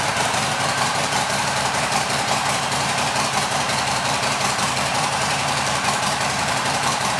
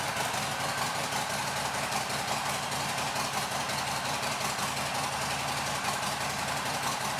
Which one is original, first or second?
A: second